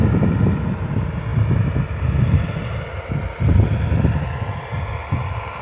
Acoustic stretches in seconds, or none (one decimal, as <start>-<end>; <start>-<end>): 0.0-5.6